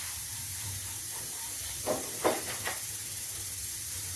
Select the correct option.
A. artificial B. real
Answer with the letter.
A